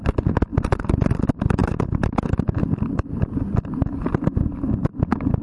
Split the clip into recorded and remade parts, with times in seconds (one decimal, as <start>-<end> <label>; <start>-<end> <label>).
0.0-1.6 recorded; 1.6-2.6 remade; 2.6-5.4 recorded